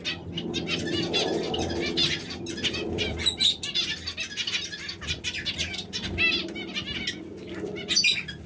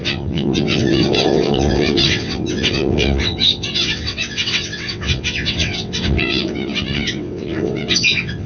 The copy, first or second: second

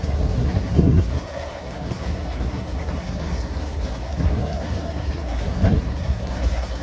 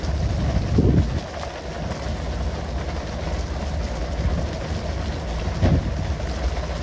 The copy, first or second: first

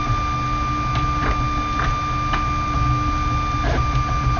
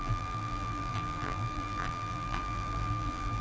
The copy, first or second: second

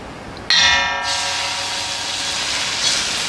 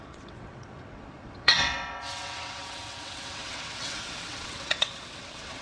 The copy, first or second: second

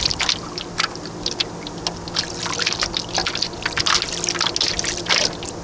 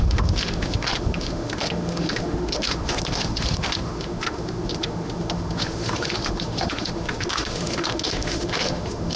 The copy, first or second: second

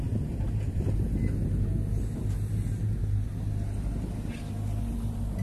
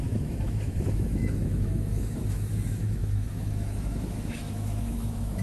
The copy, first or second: second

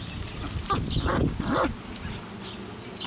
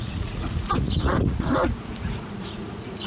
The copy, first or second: second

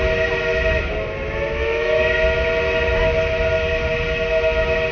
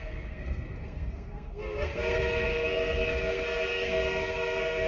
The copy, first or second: second